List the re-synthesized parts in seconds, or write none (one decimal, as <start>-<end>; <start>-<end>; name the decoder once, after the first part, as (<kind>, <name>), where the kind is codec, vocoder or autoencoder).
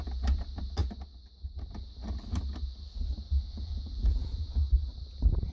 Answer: 3.5-4.6 (vocoder, Vocos)